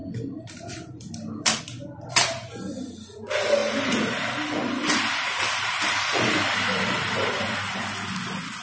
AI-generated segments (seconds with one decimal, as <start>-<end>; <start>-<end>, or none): 0.0-1.6